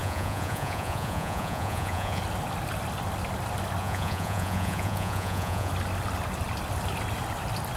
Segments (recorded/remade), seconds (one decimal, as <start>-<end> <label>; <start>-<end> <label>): 0.0-2.2 remade; 2.2-3.8 recorded; 3.8-5.7 remade; 5.7-7.8 recorded